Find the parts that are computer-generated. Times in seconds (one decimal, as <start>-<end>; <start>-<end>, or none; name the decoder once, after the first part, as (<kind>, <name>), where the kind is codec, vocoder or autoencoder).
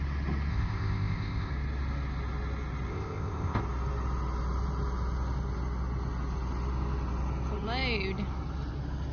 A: 0.5-1.5 (codec, ZipCodec); 2.9-3.6